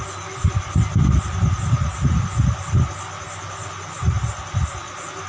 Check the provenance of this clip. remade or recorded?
recorded